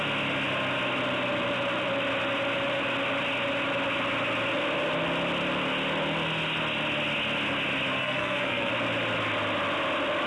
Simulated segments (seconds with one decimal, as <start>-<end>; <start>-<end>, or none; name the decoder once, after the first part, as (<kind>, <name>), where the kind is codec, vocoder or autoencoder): 8.0-8.7 (codec, SNAC)